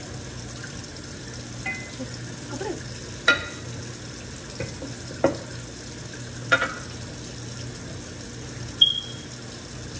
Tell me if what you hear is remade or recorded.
recorded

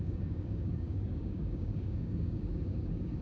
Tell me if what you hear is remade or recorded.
remade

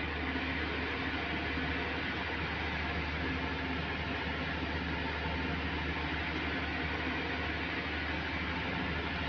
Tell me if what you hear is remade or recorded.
recorded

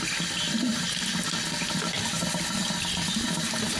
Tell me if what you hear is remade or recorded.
recorded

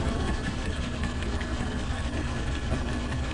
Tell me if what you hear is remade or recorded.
remade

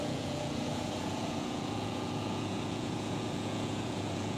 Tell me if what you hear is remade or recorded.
remade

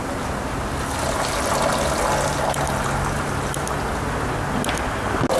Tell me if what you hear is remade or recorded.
recorded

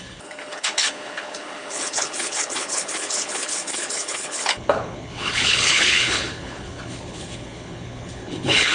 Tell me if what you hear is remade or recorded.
remade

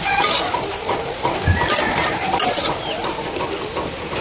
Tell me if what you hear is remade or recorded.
recorded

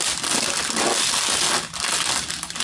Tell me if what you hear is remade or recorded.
recorded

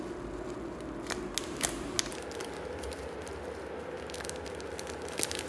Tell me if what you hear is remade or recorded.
recorded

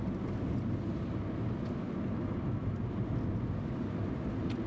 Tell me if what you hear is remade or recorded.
recorded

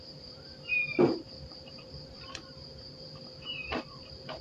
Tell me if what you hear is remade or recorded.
remade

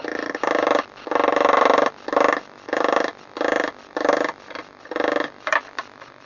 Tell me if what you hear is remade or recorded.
recorded